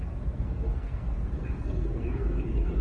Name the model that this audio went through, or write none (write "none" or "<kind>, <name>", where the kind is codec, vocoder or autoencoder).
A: codec, SNAC